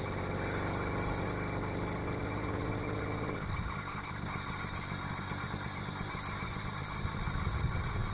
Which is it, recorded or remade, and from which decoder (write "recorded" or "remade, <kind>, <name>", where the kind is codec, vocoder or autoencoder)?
recorded